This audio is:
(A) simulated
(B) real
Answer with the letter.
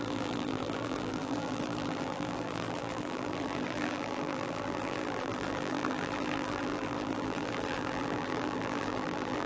A